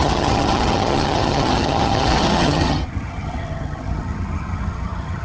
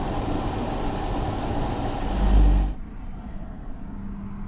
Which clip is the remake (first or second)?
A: first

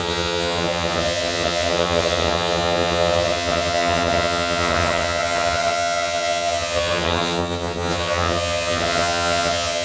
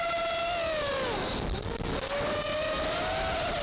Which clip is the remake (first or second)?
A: first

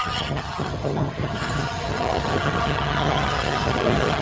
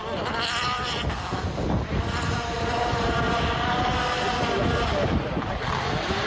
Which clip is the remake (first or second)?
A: first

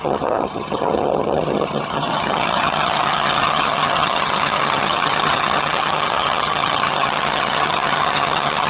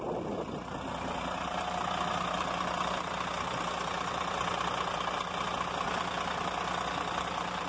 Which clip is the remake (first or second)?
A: first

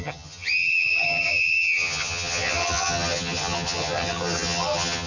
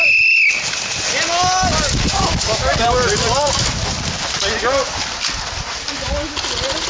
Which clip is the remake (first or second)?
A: first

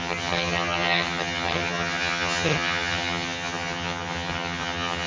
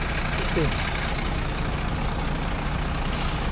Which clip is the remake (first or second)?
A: first